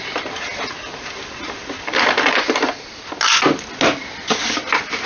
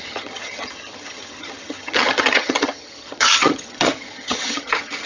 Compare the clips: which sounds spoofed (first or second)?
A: second